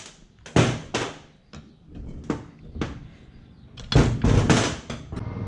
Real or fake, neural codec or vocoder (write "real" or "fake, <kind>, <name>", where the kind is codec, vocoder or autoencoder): real